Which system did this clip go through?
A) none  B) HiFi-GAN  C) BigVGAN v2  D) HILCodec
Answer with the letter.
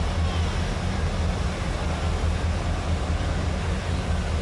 A